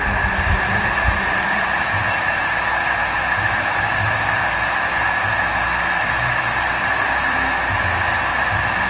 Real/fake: real